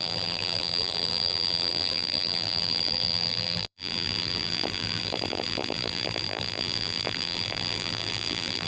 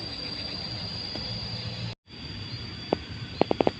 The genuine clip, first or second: second